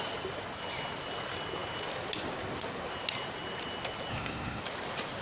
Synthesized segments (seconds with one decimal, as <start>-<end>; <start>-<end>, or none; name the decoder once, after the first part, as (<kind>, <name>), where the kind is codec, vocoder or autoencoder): 4.1-4.6 (codec, SNAC)